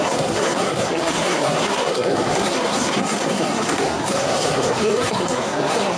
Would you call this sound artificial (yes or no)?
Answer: yes